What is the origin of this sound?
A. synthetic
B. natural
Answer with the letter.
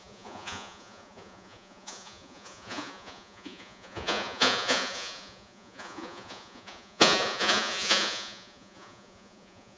A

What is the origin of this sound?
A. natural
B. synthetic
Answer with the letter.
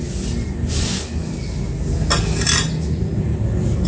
A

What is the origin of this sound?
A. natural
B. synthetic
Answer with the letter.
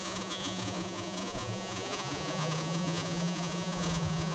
B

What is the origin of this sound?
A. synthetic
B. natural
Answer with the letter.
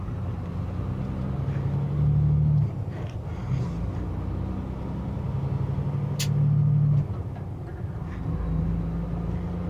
B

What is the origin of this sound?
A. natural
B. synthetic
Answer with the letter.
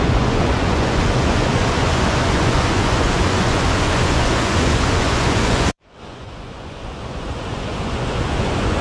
B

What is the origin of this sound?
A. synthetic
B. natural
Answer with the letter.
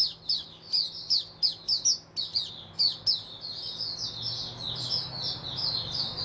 B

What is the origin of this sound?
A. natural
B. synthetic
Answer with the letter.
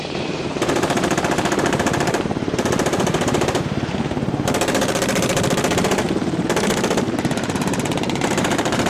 B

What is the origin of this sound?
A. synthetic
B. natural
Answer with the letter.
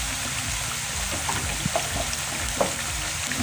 B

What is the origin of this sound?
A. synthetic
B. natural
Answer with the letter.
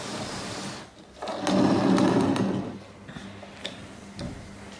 B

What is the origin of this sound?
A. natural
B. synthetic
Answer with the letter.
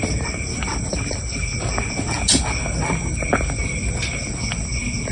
A